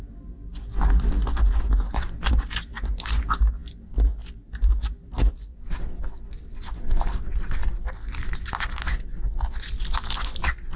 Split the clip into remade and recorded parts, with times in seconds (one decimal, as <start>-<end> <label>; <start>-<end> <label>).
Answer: 0.0-10.8 recorded